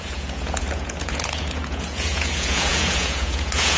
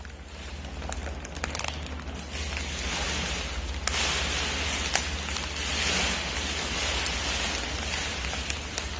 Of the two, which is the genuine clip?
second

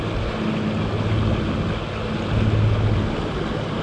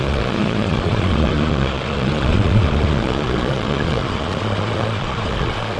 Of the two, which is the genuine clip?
first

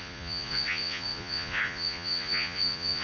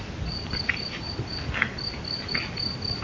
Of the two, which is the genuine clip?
second